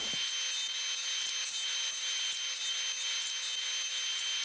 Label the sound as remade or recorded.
recorded